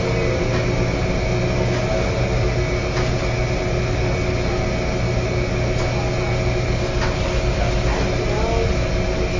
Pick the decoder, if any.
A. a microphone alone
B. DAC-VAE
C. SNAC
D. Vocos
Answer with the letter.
A